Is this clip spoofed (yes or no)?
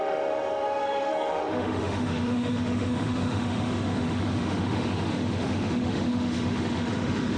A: yes